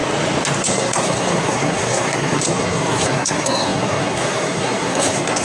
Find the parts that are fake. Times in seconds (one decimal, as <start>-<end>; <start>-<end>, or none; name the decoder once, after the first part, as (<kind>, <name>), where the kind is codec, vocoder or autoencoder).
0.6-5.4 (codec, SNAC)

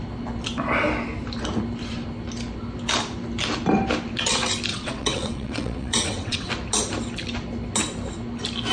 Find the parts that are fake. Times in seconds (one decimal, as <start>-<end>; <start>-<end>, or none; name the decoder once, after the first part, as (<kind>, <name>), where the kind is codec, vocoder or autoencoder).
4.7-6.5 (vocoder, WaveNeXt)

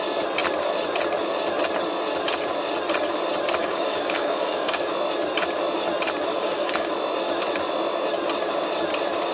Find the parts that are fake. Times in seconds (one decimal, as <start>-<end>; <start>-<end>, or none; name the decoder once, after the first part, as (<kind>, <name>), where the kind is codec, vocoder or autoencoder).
3.6-4.9 (codec, DAC); 6.3-6.9